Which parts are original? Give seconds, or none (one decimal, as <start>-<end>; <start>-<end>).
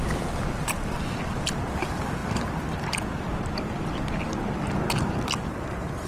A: 0.0-6.1